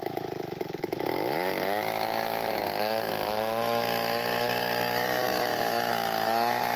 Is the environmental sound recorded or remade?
remade